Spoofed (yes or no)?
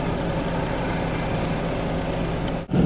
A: no